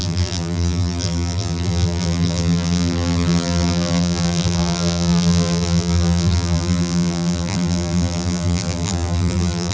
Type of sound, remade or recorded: remade